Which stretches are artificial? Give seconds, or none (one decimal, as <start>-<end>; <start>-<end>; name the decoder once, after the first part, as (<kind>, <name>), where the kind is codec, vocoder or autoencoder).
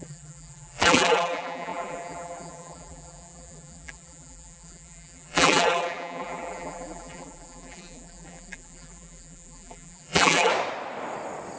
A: 0.0-10.5 (vocoder, BigVGAN v2)